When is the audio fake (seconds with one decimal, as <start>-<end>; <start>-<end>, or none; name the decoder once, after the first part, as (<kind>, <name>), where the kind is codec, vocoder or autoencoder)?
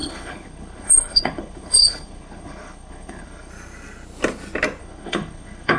0.0-3.5 (codec, HILCodec); 4.8-5.8